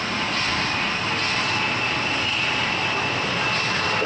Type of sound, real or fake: real